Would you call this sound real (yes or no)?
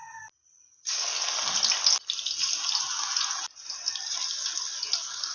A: yes